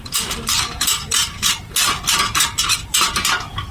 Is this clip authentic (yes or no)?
no